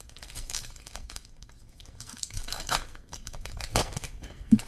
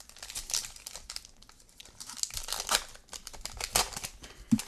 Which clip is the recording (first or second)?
second